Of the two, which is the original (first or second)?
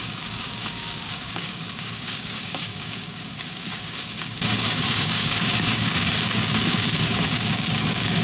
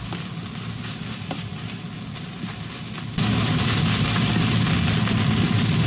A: second